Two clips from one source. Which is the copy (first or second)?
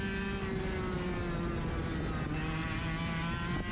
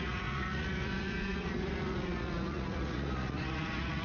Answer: second